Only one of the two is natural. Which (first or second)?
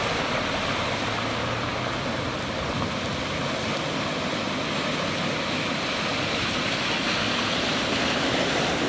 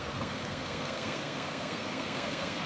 first